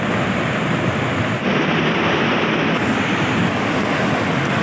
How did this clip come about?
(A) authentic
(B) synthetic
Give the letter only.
A